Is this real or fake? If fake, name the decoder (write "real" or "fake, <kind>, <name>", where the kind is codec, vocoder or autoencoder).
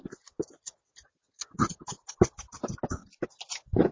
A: real